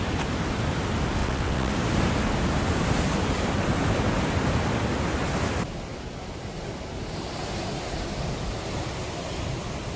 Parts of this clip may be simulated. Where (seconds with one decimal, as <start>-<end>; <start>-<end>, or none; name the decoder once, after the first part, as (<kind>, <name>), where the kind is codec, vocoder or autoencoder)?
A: 1.2-1.7 (vocoder, WaveNeXt)